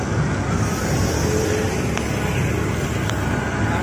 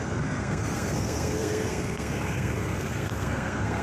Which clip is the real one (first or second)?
first